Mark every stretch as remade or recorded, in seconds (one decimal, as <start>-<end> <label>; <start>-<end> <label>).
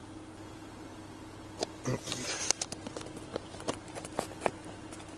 0.0-3.3 recorded; 3.3-4.1 remade; 4.1-5.2 recorded